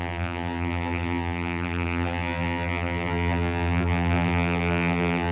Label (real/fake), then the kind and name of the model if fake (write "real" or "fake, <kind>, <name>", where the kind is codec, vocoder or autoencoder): fake, vocoder, BigVGAN v2